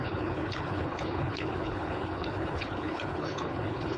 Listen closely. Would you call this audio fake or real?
fake